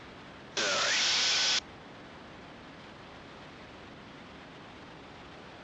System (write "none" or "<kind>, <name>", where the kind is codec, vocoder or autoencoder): vocoder, BigVGAN v2